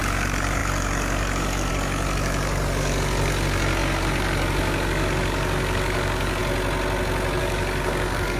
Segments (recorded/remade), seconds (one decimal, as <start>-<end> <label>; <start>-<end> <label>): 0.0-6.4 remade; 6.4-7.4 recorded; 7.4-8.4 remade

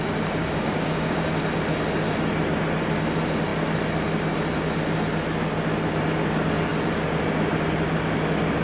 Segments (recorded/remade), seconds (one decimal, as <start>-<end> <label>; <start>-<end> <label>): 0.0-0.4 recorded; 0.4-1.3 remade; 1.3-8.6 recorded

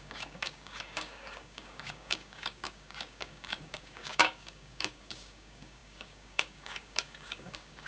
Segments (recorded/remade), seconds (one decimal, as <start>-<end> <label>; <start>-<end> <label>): 0.0-7.9 remade

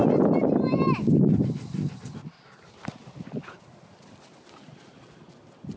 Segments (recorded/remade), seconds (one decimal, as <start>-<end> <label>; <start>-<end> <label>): 0.0-5.8 recorded

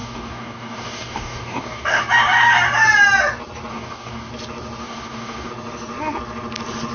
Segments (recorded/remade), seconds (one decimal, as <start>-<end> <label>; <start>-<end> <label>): 0.0-2.0 remade; 2.0-3.7 recorded; 3.7-4.3 remade; 4.3-4.8 recorded; 4.8-5.5 remade; 5.5-6.9 recorded

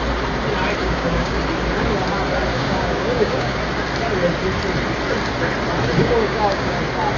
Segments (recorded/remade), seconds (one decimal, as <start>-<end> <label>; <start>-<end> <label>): 0.0-0.8 recorded; 0.8-1.4 remade; 1.4-2.5 recorded; 2.5-3.6 remade; 3.6-6.0 recorded; 6.0-6.8 remade; 6.8-7.2 recorded

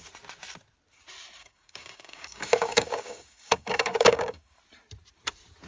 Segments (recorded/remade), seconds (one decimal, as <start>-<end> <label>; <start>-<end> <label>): 0.0-1.4 recorded; 1.4-4.6 remade; 4.6-5.7 recorded

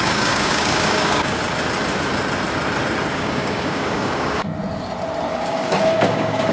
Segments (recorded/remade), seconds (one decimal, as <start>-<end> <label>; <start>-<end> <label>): 0.0-1.4 remade; 1.4-3.1 recorded; 3.1-4.5 remade; 4.5-5.3 recorded; 5.3-6.5 remade